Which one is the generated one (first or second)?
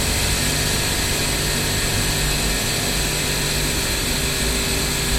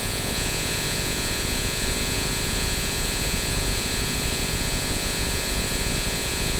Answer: second